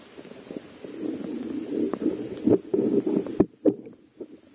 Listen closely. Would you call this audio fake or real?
real